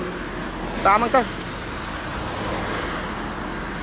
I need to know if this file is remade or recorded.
recorded